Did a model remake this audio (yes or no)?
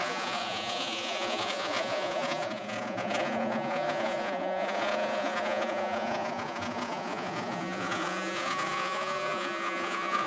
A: yes